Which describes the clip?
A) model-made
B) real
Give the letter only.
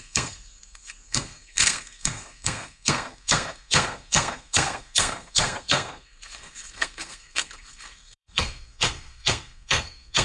A